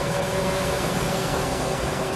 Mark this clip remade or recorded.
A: remade